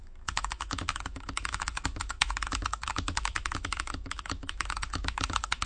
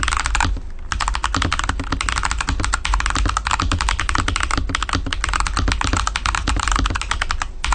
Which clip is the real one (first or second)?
second